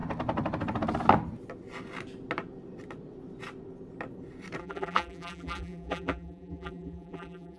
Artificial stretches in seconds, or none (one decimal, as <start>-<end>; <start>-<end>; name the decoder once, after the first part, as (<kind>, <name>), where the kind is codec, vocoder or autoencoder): 4.6-7.6 (vocoder, BigVGAN v2)